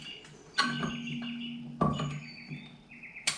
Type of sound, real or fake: real